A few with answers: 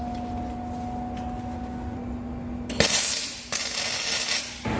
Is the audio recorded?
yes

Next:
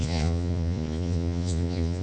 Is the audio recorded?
no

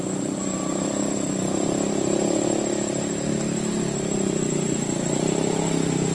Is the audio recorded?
yes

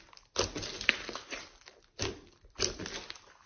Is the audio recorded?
yes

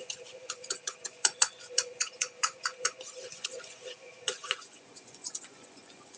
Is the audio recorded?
no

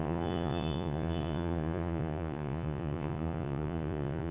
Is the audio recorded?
no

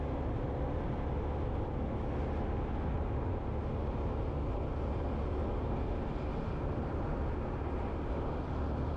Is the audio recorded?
yes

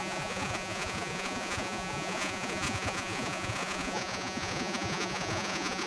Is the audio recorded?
no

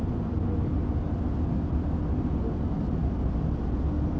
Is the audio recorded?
yes